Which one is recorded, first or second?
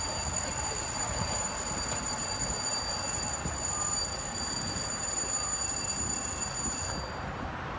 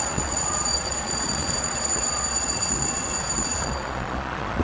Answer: first